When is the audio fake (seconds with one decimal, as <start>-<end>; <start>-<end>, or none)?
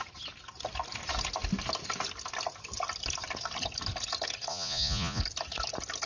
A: 4.5-5.2